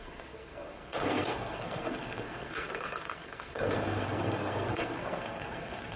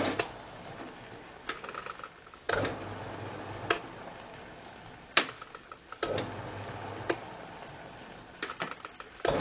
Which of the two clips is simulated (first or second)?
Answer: first